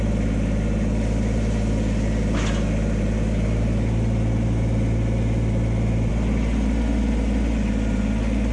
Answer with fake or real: real